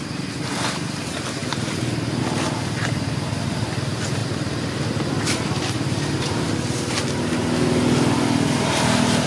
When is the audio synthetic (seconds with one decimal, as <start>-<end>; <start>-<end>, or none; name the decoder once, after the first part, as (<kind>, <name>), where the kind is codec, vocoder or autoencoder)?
none